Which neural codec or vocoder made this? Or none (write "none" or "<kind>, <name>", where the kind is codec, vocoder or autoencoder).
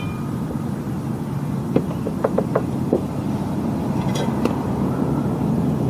vocoder, BigVGAN v2